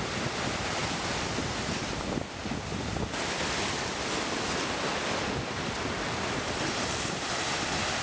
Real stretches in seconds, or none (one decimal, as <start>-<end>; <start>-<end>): 0.0-0.8; 1.9-2.9; 7.3-8.0